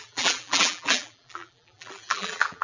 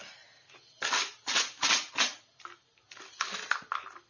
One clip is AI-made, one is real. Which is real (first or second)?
second